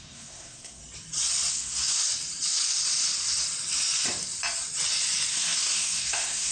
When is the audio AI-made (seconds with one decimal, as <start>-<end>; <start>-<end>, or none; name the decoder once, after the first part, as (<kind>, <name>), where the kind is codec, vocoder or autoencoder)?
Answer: 0.0-0.8 (codec, SNAC); 1.5-2.0; 5.3-6.5